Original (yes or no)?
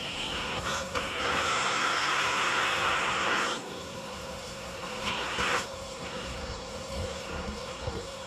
no